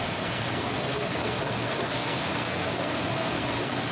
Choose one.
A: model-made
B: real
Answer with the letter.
A